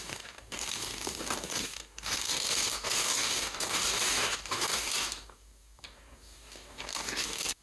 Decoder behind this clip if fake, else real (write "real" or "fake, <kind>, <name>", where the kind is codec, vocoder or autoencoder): fake, codec, DAC